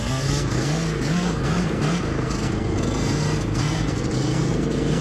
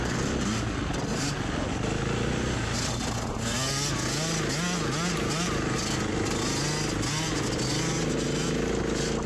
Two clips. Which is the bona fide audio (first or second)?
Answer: second